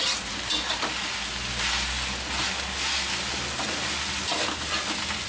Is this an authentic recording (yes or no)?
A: yes